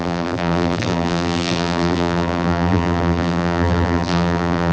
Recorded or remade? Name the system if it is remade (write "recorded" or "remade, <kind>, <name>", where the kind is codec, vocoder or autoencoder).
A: remade, vocoder, BigVGAN v2